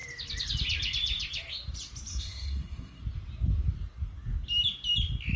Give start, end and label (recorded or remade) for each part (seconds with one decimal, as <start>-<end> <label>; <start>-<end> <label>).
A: 0.0-2.1 recorded; 2.1-3.0 remade; 3.0-5.4 recorded